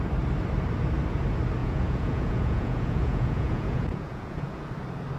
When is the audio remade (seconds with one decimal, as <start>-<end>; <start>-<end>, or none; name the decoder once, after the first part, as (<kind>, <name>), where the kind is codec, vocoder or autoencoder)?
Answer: 1.6-4.7 (vocoder, Vocos)